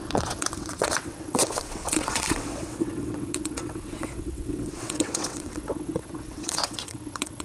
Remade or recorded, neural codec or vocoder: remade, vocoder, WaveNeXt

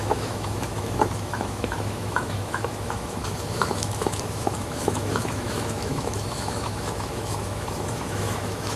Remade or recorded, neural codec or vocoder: remade, autoencoder, DAC-VAE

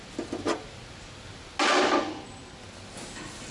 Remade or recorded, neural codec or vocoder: recorded